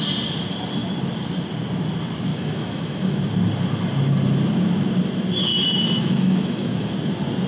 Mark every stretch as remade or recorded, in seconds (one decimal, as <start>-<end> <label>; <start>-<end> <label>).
0.0-2.3 recorded; 2.3-3.2 remade; 3.2-5.5 recorded; 5.5-6.9 remade; 6.9-7.5 recorded